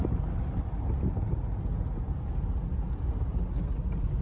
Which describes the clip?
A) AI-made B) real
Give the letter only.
B